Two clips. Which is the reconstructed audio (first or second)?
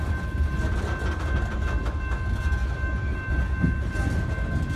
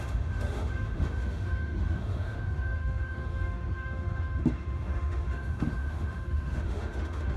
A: second